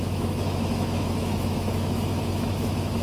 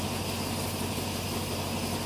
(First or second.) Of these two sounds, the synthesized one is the first